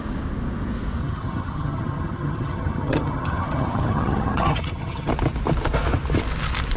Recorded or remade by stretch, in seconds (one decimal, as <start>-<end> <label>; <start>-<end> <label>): 0.0-1.0 recorded; 1.0-5.1 remade; 5.1-6.8 recorded